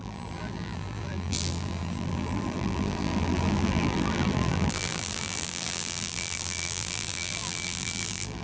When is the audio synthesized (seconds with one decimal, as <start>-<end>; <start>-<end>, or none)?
0.0-8.4